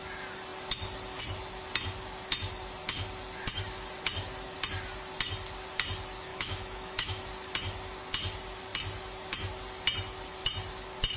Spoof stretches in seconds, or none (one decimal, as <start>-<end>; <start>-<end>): 6.3-7.2